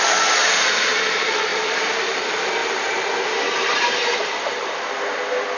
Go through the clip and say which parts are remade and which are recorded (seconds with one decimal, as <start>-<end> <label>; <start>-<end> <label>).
0.0-0.4 recorded; 0.4-1.0 remade; 1.0-1.5 recorded; 1.5-2.2 remade; 2.2-2.6 recorded; 2.6-4.7 remade; 4.7-5.6 recorded